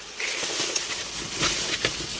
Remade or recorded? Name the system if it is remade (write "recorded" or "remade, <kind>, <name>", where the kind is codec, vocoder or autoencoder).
recorded